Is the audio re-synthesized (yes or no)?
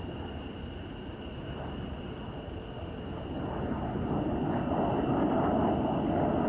no